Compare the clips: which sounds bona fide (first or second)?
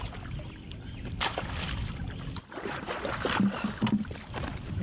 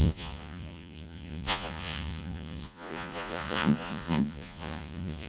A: first